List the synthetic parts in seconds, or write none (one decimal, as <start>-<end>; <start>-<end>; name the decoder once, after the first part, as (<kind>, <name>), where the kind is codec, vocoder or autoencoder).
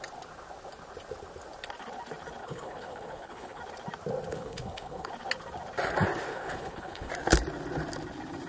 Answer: 2.4-3.6 (codec, HILCodec); 4.3-5.1; 6.3-7.1